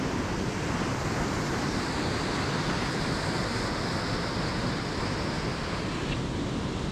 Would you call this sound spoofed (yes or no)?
no